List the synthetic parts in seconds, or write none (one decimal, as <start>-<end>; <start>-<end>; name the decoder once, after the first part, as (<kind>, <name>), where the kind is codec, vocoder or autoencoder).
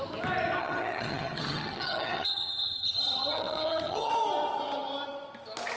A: 0.6-4.1 (vocoder, HiFi-GAN)